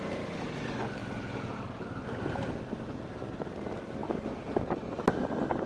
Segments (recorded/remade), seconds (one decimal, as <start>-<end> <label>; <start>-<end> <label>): 0.0-5.7 recorded